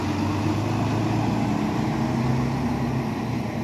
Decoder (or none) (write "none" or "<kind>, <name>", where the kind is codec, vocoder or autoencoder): none